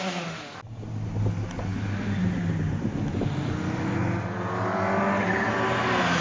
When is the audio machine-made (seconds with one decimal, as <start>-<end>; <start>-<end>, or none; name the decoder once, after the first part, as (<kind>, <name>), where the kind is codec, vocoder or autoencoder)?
none